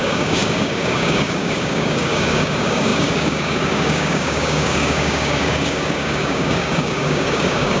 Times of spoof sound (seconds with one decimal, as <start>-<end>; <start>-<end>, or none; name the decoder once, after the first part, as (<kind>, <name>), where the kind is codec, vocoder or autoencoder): 0.0-7.8 (codec, DAC)